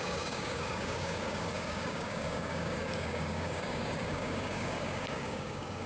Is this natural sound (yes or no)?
no